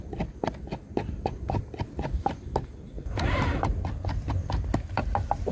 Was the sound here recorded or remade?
recorded